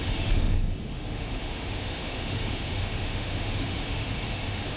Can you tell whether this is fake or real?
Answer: fake